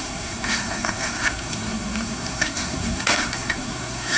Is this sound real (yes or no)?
no